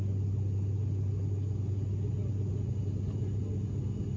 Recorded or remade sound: recorded